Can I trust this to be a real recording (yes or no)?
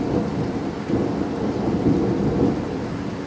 yes